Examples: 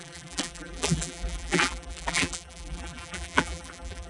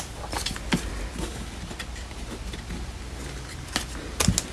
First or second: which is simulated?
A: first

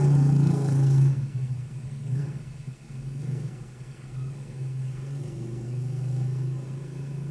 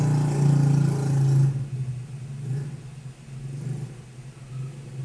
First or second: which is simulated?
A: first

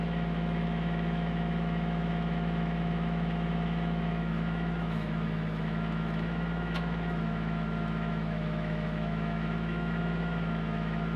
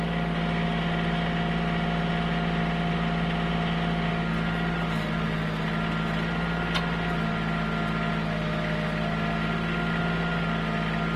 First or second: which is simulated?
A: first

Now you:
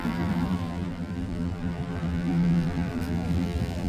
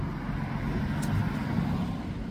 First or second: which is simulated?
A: first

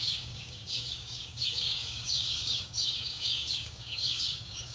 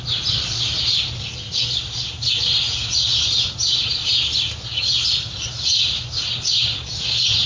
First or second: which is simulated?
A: first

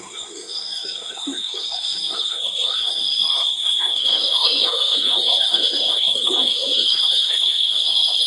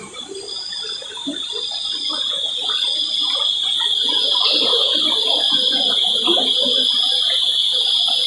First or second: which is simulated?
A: first